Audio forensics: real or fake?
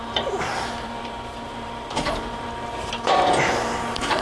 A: fake